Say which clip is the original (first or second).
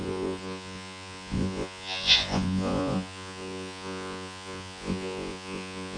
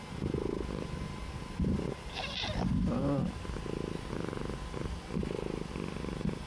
second